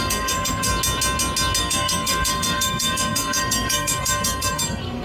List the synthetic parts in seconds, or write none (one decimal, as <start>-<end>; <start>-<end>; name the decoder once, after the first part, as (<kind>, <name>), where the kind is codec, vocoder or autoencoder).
0.0-0.7 (codec, SNAC); 1.6-5.0